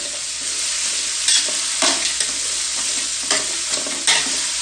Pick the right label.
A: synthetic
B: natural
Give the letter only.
B